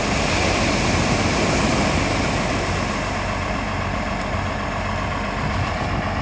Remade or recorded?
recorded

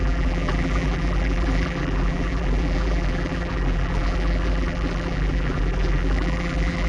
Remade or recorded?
remade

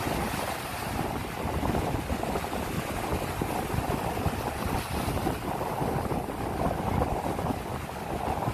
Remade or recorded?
recorded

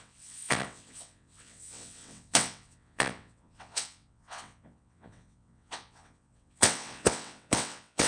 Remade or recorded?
remade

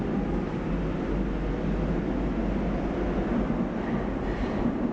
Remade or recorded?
recorded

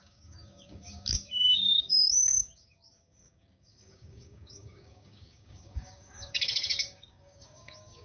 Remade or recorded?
remade